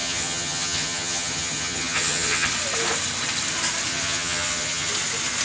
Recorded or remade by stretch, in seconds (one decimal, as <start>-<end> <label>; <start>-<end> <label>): 0.0-2.5 remade; 2.5-3.9 recorded; 3.9-4.9 remade; 4.9-5.4 recorded